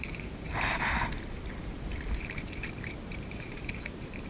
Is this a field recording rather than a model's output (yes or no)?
no